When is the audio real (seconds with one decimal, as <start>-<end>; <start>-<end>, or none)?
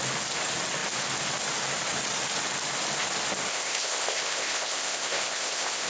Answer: 0.0-3.5